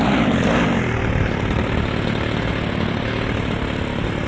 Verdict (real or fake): real